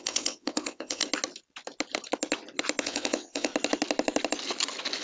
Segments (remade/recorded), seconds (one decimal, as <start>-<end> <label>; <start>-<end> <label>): 0.0-1.0 remade; 1.0-2.8 recorded; 2.8-3.5 remade; 3.5-5.0 recorded